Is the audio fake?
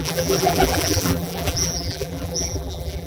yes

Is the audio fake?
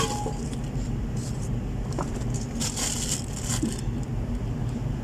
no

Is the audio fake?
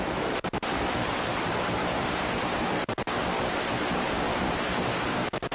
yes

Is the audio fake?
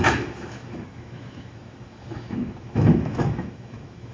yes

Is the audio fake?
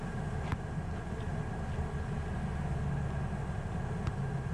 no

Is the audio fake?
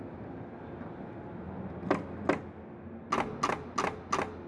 no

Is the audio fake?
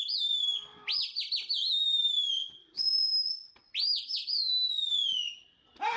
no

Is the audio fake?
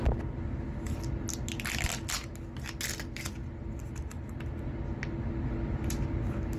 no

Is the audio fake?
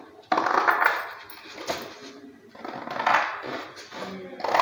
no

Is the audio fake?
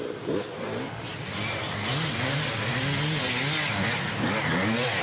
no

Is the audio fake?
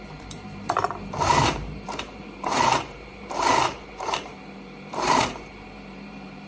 yes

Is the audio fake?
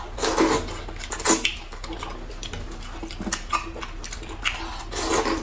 no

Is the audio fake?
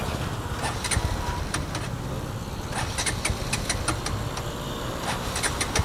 no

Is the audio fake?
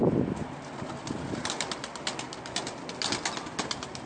no